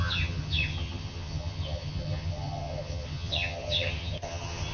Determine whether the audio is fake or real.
fake